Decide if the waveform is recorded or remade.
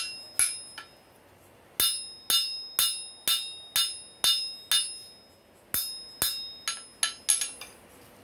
recorded